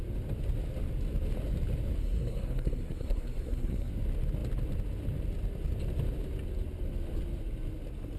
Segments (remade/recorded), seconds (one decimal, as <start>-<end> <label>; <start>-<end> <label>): 0.0-2.0 recorded; 2.0-3.9 remade; 3.9-8.2 recorded